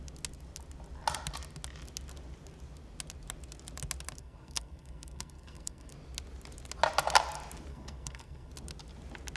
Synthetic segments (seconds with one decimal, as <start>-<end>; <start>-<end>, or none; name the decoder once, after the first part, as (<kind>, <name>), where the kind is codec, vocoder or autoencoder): 4.2-5.9 (codec, SNAC); 7.7-8.5